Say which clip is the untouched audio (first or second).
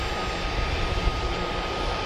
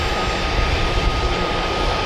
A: first